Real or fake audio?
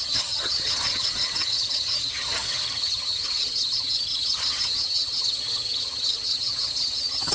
fake